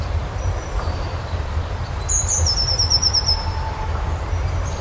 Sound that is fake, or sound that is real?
fake